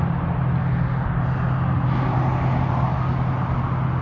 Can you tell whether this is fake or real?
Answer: real